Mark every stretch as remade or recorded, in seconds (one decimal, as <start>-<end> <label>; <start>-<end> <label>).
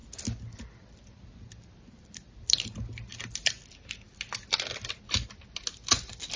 0.0-6.4 recorded